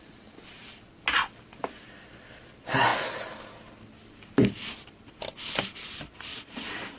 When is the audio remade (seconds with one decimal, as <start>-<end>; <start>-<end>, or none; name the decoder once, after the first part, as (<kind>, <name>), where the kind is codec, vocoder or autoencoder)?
6.3-7.0 (vocoder, Vocos)